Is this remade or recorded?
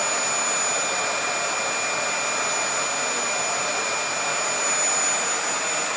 recorded